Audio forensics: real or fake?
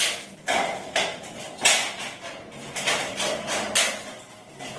real